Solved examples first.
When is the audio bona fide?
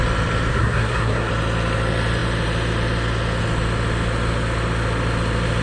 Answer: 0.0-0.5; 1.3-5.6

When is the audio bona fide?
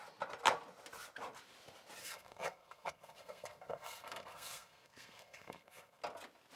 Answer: 0.0-2.0; 6.0-6.6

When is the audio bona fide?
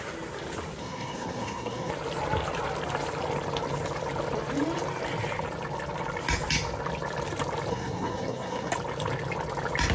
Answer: 0.0-0.8; 1.9-7.7; 8.7-9.9